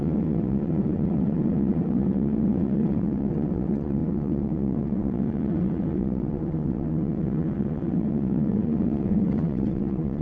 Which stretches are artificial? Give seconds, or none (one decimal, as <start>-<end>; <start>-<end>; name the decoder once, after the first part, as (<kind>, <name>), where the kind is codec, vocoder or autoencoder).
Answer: 0.0-10.2 (vocoder, WaveNeXt)